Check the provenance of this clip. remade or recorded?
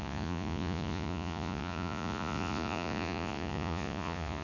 remade